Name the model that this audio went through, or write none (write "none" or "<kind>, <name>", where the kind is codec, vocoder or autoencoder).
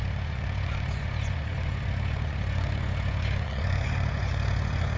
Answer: vocoder, Vocos